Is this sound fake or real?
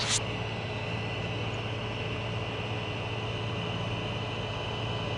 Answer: real